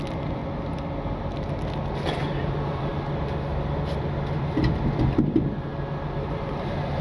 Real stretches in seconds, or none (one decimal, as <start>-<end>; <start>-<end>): 0.4-1.9; 2.9-5.2